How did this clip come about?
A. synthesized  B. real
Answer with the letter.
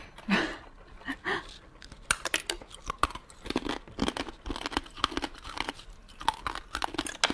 B